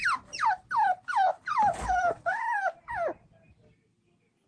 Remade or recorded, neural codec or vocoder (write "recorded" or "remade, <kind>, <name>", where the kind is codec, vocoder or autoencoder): recorded